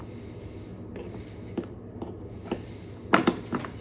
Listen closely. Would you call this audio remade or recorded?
recorded